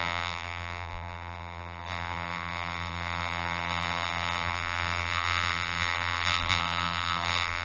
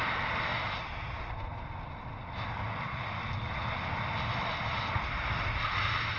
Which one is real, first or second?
second